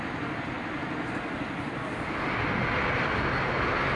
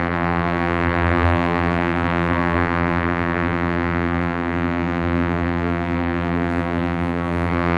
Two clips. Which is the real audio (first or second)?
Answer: first